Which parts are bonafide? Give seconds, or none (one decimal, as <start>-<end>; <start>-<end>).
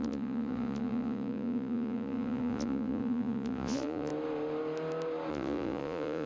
4.1-5.3